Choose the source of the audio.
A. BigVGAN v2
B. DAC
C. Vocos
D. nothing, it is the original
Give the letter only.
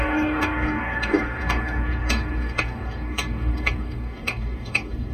B